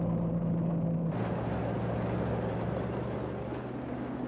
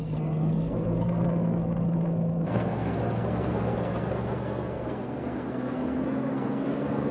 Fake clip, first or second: second